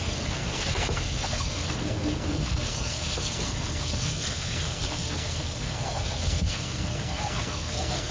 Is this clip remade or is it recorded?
remade